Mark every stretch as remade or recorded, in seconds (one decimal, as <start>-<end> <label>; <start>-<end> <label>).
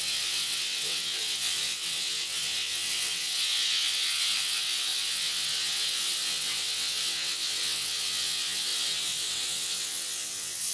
0.0-10.7 remade